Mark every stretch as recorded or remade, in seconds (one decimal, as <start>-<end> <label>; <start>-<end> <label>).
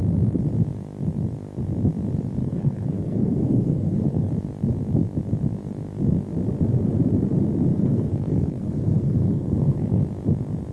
0.0-2.4 recorded; 2.4-4.3 remade; 4.3-7.7 recorded; 7.7-10.0 remade; 10.0-10.7 recorded